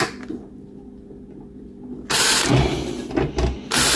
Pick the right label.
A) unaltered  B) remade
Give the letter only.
A